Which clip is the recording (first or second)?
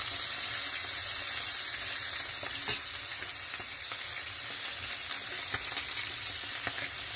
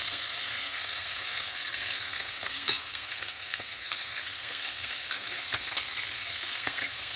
first